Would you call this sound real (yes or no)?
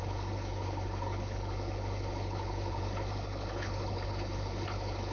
no